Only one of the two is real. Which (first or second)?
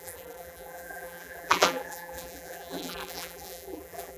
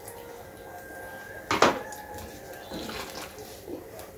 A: second